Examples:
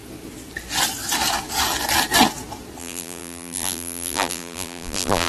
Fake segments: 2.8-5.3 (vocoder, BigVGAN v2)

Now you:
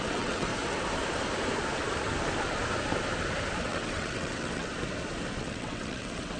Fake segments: 0.0-0.5 (vocoder, WaveNeXt); 3.6-4.7; 5.4-6.4

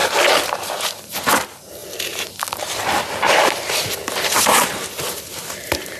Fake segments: 0.0-6.0 (vocoder, BigVGAN v2)